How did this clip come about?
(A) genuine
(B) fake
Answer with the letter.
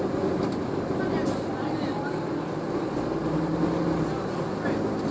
A